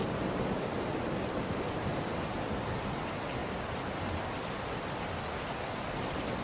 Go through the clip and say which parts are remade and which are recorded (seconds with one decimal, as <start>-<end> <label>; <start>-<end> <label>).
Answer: 0.0-1.0 remade; 1.0-1.9 recorded; 1.9-2.6 remade; 2.6-3.4 recorded; 3.4-4.0 remade; 4.0-6.4 recorded